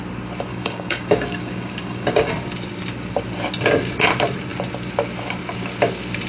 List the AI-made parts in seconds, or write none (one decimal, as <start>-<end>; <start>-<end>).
0.5-2.3